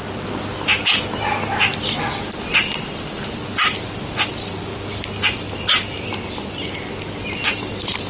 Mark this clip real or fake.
real